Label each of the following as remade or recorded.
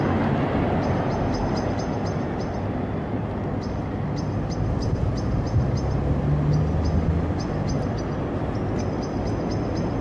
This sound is recorded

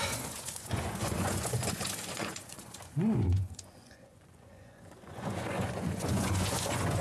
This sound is remade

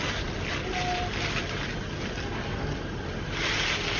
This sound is recorded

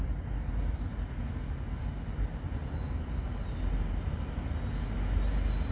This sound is recorded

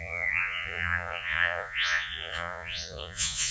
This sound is remade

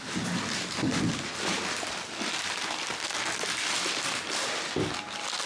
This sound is recorded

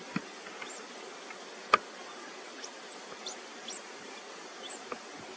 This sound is recorded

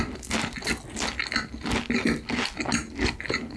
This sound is recorded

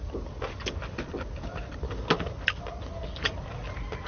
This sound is recorded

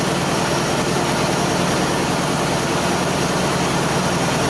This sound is recorded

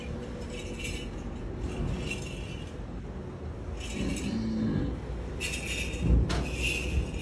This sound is recorded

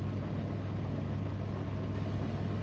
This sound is recorded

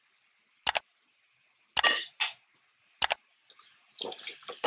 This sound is recorded